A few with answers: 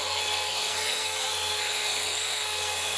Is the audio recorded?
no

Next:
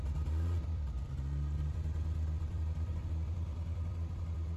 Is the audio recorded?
no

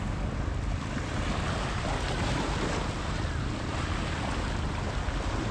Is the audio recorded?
yes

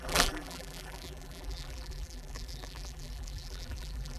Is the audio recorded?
no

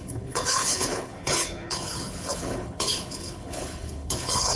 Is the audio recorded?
no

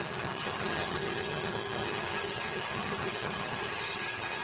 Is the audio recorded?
no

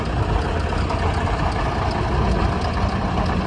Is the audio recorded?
yes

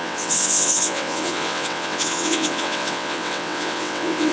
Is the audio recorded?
no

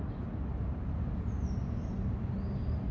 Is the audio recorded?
yes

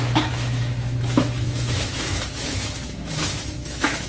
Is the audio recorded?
no